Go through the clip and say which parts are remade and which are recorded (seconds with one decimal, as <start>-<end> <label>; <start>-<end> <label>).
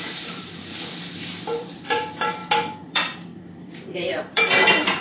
0.0-0.7 remade; 0.7-1.4 recorded; 1.4-2.4 remade; 2.4-2.9 recorded; 2.9-5.0 remade